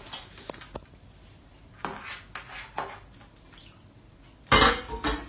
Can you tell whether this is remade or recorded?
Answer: recorded